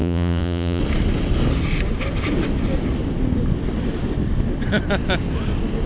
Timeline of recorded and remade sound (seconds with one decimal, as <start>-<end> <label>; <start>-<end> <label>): 0.0-0.8 remade; 0.8-5.9 recorded